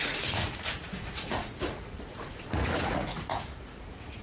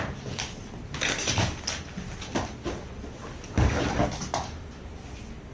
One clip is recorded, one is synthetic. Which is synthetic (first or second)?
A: first